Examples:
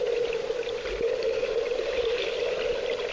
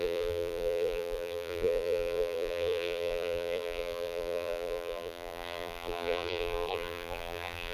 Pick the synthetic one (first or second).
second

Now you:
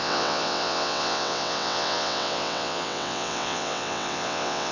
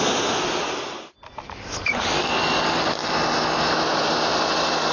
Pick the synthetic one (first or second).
first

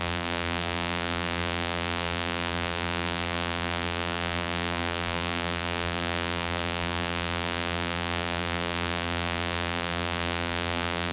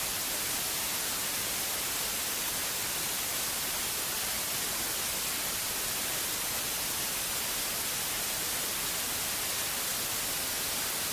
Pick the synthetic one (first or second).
first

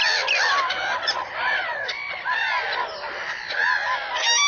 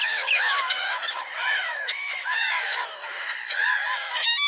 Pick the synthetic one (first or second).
second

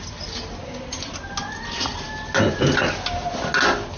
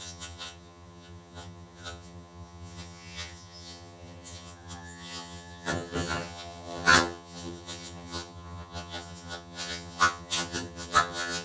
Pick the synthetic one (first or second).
second